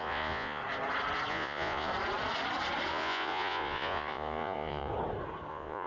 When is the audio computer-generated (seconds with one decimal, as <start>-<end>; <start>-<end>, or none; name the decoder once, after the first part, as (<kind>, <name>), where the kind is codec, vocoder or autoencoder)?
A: 0.0-0.6 (vocoder, Vocos); 1.3-1.9; 2.9-4.9; 5.5-5.9